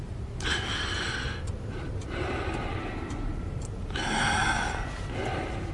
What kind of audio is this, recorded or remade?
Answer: recorded